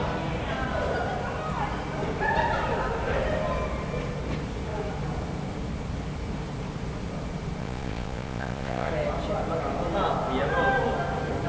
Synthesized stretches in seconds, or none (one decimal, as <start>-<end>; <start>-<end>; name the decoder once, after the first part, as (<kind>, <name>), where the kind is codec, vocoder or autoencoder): 7.6-8.9 (vocoder, Vocos)